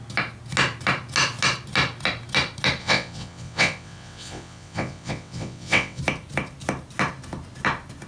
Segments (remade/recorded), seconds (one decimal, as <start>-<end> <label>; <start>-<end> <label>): 0.0-2.8 recorded; 2.8-6.0 remade; 6.0-8.1 recorded